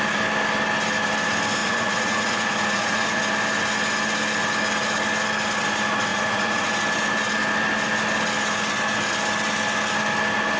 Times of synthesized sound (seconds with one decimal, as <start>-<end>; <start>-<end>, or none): 1.6-3.2; 6.1-6.7